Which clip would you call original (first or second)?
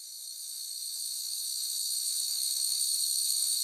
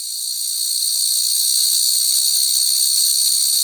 second